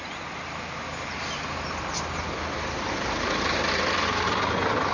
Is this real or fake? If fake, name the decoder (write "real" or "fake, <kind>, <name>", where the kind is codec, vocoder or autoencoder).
real